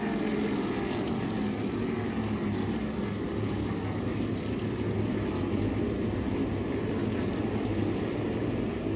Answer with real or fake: real